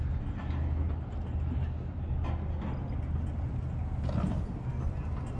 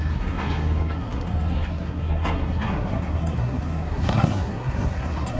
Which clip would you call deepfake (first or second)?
second